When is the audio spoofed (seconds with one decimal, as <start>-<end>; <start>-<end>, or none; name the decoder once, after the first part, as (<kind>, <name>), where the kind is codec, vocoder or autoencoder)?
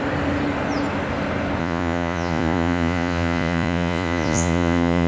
1.6-5.1 (vocoder, Vocos)